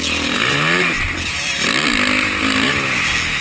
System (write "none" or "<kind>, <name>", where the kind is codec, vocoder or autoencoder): none